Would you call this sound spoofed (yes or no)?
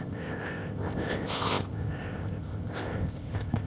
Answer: yes